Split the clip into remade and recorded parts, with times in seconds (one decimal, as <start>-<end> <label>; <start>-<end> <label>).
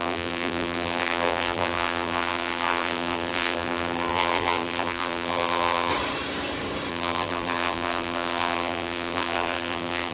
0.0-5.9 remade; 5.9-6.9 recorded; 6.9-10.1 remade